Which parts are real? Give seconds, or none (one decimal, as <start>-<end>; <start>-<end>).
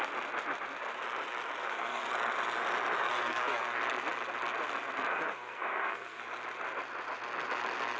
0.0-1.6; 2.1-3.0; 3.8-5.1; 6.2-8.0